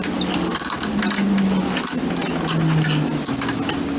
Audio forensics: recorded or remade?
recorded